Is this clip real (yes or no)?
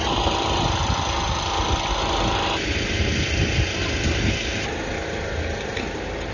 yes